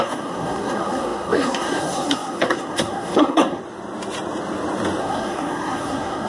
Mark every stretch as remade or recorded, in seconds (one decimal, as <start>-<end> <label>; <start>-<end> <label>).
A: 0.0-3.6 remade; 3.6-5.0 recorded; 5.0-6.3 remade